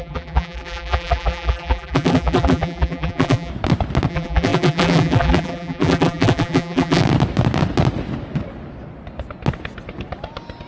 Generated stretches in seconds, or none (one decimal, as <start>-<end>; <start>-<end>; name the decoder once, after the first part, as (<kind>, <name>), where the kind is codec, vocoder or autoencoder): 0.0-3.5 (vocoder, BigVGAN v2); 4.1-7.0